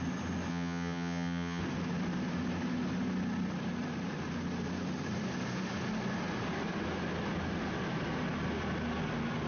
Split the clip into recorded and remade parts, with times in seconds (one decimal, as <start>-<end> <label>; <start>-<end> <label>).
0.0-0.5 recorded; 0.5-1.6 remade; 1.6-9.5 recorded